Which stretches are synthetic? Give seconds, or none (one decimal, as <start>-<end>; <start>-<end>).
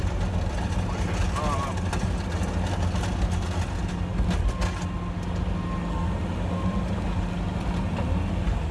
none